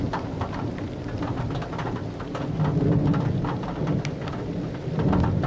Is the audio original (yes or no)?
yes